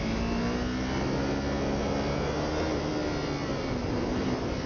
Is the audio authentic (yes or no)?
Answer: yes